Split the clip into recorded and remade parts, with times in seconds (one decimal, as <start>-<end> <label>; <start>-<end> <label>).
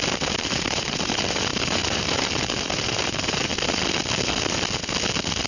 0.0-3.5 remade; 3.5-5.5 recorded